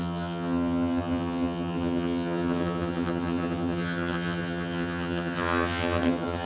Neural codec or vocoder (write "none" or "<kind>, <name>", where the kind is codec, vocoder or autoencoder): vocoder, HiFi-GAN